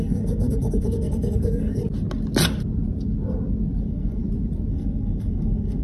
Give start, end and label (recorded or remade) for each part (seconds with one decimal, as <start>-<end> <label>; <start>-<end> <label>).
0.0-1.8 remade; 1.8-3.8 recorded; 3.8-4.2 remade; 4.2-4.7 recorded; 4.7-5.8 remade